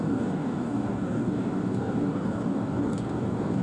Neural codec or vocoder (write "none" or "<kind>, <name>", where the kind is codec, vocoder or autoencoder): codec, DAC